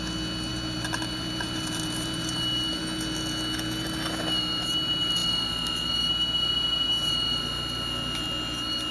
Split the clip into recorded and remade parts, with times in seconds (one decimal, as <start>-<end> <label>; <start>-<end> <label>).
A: 0.0-0.5 recorded; 0.5-2.8 remade; 2.8-8.9 recorded